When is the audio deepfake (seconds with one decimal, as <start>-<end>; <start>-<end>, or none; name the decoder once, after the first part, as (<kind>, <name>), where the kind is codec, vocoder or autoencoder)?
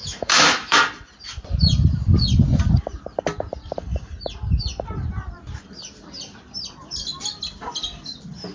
0.0-0.8 (autoencoder, DAC-VAE)